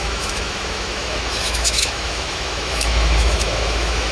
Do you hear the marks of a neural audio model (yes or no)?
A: yes